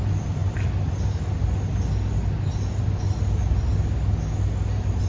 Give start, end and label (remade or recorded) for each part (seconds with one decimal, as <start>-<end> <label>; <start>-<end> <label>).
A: 0.0-5.1 recorded